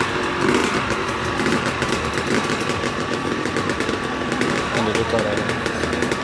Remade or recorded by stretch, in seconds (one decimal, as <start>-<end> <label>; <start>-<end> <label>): 0.0-0.6 recorded; 0.6-4.3 remade; 4.3-6.2 recorded